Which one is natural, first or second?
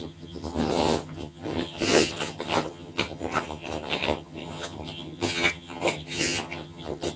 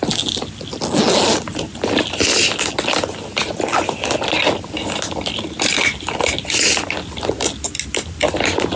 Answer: second